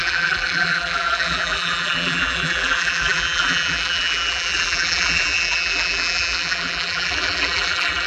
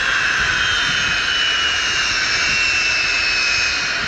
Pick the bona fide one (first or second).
second